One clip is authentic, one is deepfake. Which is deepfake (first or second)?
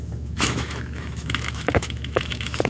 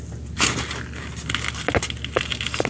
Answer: first